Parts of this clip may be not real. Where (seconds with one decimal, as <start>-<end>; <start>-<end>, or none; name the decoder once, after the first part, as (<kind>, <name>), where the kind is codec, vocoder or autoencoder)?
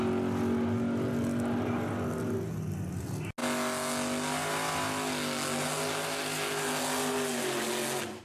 none